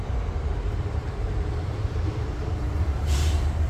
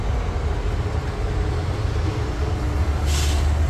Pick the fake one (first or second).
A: first